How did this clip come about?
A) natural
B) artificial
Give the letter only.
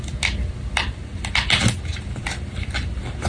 A